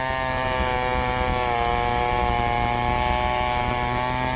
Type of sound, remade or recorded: recorded